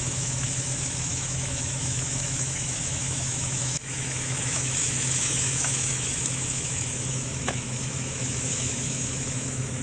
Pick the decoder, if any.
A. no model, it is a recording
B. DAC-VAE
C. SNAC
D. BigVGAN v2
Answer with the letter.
B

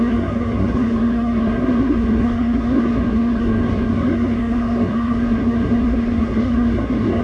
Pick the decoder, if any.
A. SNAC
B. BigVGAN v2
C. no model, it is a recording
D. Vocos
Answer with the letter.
A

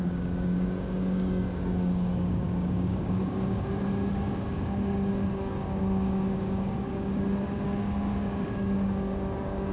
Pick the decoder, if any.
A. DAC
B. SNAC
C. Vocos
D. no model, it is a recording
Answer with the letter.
A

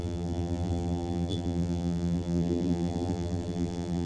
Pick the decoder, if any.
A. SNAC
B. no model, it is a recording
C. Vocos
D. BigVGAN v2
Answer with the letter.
D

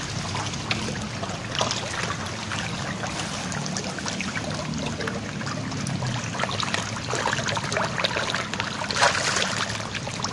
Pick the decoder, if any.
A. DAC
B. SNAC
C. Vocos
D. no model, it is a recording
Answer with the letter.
D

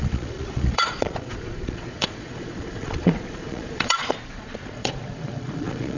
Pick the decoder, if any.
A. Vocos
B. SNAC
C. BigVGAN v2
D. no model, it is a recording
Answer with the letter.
A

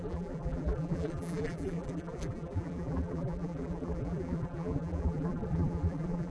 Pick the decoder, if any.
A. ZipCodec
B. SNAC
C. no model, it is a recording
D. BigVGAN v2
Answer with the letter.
D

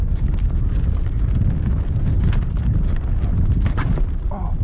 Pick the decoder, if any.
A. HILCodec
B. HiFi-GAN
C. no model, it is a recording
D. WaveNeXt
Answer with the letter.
C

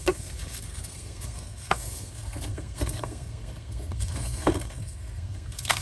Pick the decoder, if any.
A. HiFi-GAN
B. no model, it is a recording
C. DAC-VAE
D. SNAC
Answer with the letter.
D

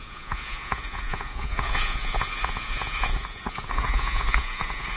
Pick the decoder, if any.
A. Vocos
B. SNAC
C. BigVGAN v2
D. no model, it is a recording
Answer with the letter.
A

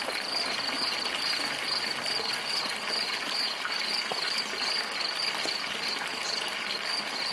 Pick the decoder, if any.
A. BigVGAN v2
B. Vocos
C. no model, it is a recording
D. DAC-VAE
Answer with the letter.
C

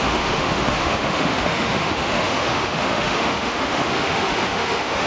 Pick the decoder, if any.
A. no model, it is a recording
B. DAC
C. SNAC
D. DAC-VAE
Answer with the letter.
D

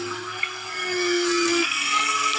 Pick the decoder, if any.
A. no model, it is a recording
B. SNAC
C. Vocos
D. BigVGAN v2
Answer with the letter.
B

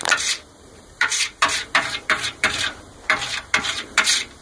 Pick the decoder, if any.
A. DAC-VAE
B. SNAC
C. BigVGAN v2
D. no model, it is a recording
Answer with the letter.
C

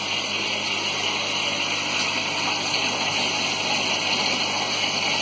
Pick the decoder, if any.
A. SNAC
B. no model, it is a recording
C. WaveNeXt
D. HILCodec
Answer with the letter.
B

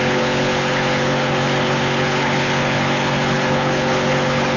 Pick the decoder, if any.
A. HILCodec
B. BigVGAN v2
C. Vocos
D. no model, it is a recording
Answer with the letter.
A